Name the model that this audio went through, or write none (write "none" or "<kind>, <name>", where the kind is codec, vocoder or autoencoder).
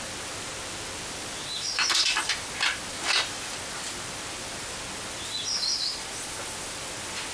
none